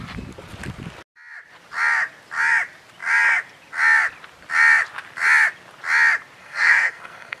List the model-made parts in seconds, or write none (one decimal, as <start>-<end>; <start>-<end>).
6.4-7.4